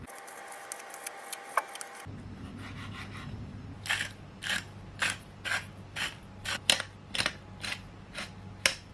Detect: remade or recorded recorded